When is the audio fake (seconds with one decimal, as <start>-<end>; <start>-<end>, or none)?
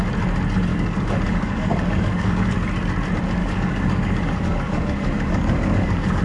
0.7-2.5; 3.4-6.2